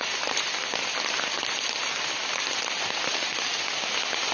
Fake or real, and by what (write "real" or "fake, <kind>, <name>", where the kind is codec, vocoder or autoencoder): real